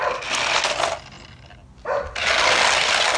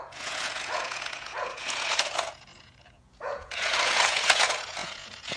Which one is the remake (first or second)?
second